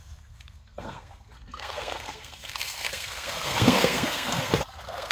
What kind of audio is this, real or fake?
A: fake